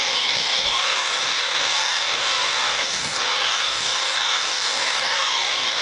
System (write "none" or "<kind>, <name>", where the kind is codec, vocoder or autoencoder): codec, DAC